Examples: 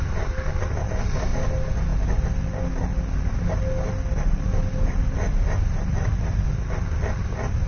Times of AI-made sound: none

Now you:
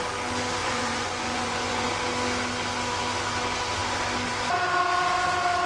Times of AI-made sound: 0.6-1.9

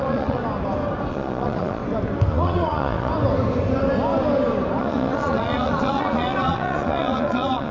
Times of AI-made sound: 0.0-0.4; 1.1-1.8; 2.3-3.1; 4.8-7.7

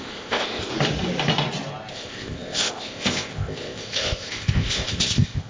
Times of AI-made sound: 0.0-0.7; 1.9-5.5

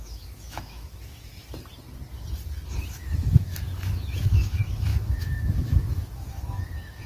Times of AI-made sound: 0.0-1.3; 2.9-7.1

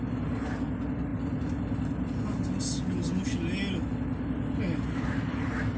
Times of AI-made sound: none